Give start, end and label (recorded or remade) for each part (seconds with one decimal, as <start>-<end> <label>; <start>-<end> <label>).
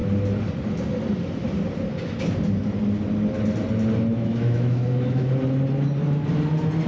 0.0-4.1 recorded; 4.1-5.3 remade; 5.3-6.9 recorded